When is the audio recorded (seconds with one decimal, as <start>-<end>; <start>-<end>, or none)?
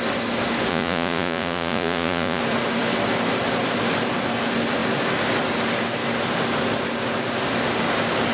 0.0-0.7; 2.4-8.3